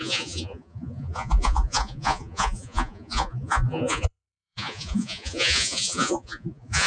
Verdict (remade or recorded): remade